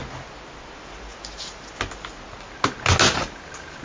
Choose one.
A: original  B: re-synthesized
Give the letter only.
A